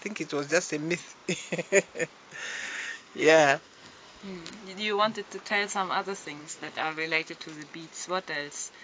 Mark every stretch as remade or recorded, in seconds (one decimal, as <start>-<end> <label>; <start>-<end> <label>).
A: 0.0-2.5 recorded; 2.5-4.6 remade; 4.6-6.4 recorded; 6.4-7.4 remade; 7.4-8.8 recorded

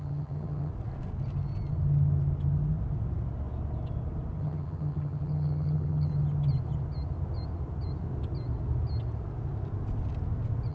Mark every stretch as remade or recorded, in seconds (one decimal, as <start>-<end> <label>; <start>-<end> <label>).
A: 0.0-0.7 remade; 0.7-4.4 recorded; 4.4-6.1 remade; 6.1-10.7 recorded